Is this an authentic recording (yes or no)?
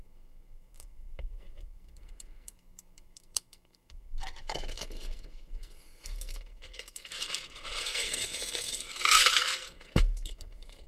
no